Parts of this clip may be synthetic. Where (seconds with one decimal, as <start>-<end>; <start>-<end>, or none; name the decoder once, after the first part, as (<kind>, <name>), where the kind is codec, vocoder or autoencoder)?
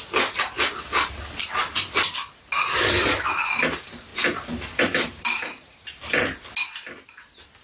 4.1-6.5 (vocoder, BigVGAN v2)